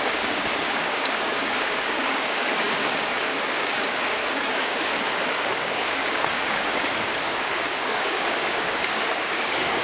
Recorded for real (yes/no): no